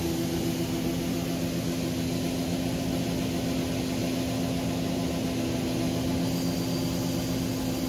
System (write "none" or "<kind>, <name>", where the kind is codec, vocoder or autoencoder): none